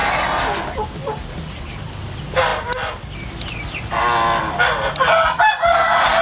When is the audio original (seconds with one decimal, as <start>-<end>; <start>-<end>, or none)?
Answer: 0.0-1.0; 1.6-2.5; 4.4-6.2